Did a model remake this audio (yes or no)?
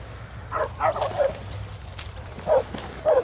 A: no